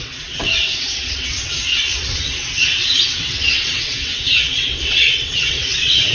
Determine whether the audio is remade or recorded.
remade